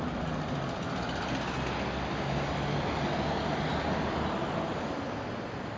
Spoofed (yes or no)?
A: no